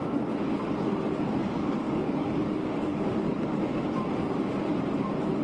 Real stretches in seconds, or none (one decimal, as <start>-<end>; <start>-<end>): 0.0-1.4; 3.6-5.4